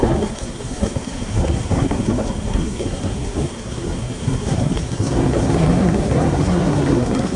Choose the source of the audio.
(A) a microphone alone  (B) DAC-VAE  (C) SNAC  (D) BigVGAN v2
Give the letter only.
C